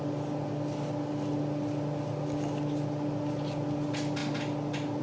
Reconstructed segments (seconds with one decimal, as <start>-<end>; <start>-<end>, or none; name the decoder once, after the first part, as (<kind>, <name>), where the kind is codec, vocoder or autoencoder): none